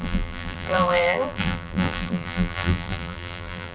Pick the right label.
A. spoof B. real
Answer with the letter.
A